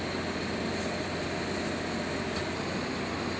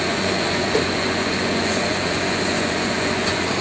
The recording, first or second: first